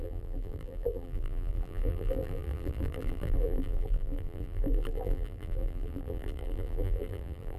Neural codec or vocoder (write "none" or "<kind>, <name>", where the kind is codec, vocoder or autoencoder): vocoder, BigVGAN v2